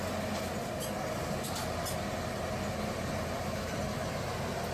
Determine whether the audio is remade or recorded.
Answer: recorded